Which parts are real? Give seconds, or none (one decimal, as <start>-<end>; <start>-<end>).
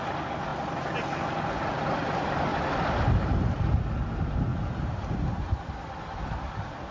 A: 0.0-2.5; 3.4-4.5; 5.7-6.9